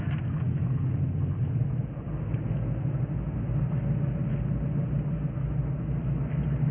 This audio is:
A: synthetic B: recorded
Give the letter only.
B